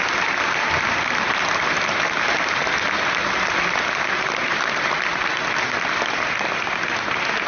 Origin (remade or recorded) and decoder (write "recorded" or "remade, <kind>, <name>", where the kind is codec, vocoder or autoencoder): recorded